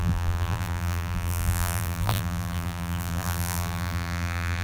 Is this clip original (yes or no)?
no